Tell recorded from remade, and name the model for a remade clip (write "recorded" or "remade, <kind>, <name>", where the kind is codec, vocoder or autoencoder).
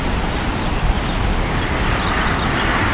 recorded